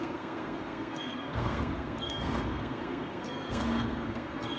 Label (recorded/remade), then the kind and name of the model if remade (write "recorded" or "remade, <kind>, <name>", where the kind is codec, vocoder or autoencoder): remade, codec, SNAC